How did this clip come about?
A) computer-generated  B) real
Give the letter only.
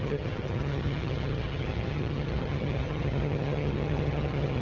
A